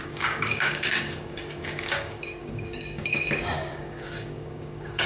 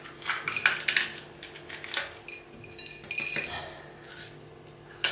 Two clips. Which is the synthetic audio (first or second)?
first